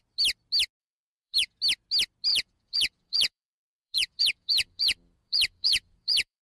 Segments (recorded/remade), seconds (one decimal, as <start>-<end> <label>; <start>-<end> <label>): 0.0-0.8 recorded; 0.8-1.5 remade; 1.5-2.3 recorded; 2.3-6.4 remade